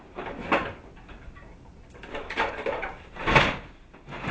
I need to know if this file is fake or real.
real